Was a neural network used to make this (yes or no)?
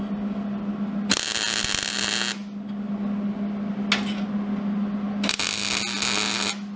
no